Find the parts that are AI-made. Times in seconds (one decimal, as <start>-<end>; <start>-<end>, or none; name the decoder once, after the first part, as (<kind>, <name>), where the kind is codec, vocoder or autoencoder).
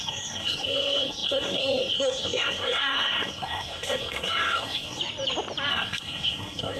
0.0-5.0 (codec, SNAC); 5.7-6.8